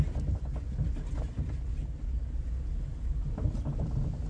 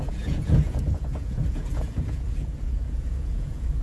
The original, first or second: first